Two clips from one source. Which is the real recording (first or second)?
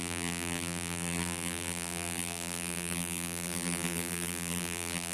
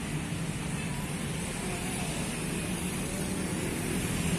second